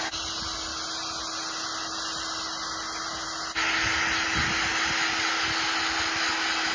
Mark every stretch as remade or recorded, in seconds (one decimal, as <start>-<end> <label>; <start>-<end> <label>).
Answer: 0.0-6.7 recorded